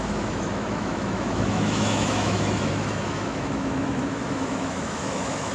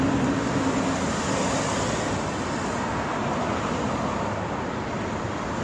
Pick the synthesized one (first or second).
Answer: first